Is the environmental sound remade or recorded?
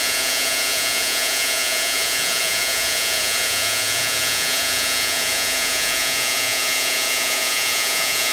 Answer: remade